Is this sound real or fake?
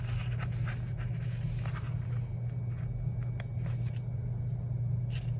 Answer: real